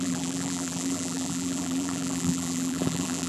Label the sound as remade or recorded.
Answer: remade